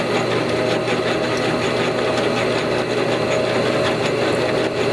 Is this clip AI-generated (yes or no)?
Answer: no